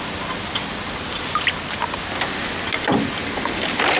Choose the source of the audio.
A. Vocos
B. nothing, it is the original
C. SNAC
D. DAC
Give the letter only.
B